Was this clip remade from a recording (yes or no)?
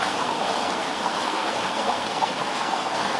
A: yes